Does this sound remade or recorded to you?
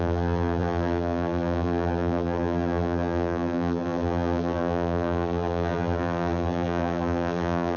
remade